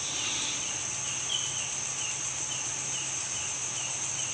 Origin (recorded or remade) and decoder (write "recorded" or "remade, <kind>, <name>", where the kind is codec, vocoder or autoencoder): recorded